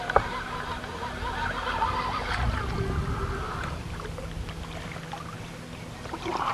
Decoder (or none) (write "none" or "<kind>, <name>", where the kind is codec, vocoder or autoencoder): none